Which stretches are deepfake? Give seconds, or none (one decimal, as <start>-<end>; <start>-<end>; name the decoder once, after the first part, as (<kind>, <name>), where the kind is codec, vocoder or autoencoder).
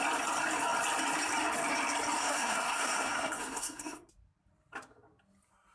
2.2-4.1 (codec, SNAC)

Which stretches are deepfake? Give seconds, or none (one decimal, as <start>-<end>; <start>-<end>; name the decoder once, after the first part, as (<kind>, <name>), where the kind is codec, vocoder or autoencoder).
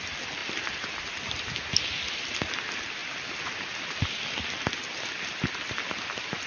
none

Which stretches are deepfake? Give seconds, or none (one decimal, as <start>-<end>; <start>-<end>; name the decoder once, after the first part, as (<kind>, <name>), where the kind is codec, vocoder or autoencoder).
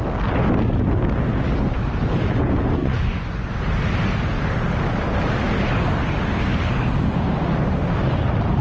2.8-3.5 (vocoder, Vocos)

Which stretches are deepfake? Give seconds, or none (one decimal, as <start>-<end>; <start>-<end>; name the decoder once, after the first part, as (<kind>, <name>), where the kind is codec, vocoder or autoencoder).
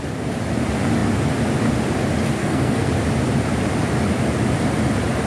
2.4-2.9 (codec, SNAC)